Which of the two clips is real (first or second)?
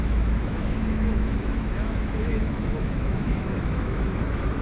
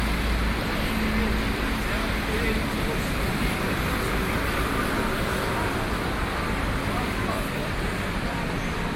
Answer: second